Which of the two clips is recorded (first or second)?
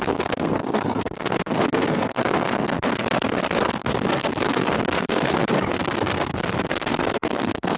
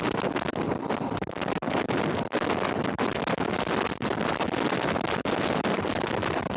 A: second